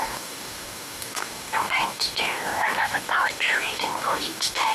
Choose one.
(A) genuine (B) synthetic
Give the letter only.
B